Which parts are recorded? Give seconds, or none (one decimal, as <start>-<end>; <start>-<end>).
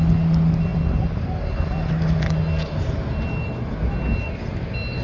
0.0-5.0